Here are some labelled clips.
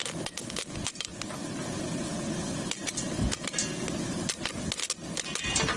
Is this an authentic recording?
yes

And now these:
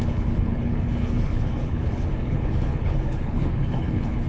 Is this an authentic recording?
no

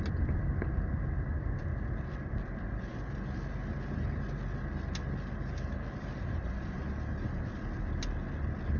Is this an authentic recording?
yes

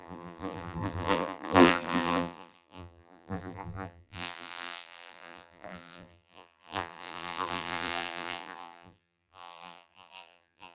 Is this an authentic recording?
no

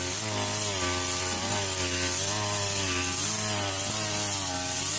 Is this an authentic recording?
yes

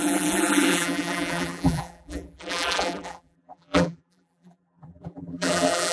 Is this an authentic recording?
no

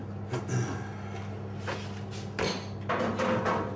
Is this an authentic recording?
yes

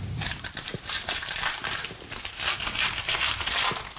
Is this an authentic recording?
no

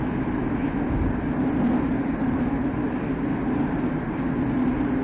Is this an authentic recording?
yes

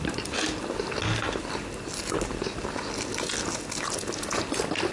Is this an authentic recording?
yes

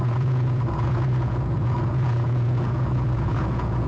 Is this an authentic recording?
no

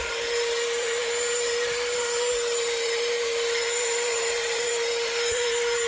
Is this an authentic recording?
no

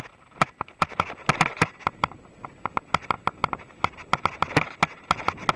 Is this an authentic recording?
yes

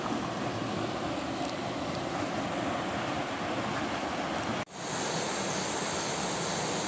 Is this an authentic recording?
yes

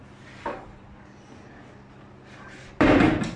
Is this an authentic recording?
yes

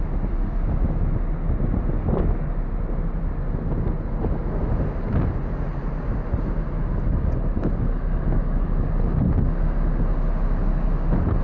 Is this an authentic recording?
yes